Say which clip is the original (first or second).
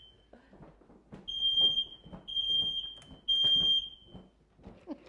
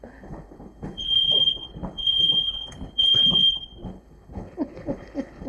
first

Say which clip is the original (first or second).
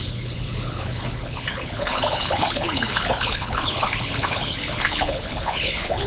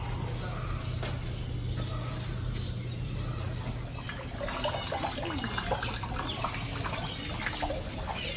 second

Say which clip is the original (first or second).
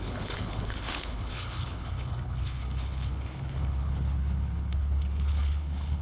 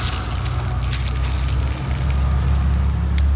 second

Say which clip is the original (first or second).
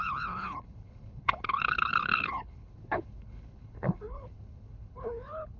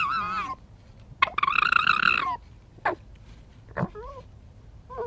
second